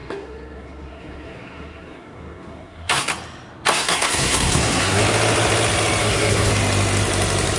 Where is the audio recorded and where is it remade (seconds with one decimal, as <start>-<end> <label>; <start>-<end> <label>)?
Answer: 0.0-3.1 remade; 3.1-3.7 recorded; 3.7-5.0 remade; 5.0-6.0 recorded; 6.0-6.5 remade; 6.5-7.6 recorded